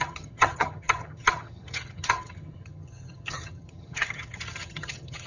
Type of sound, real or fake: fake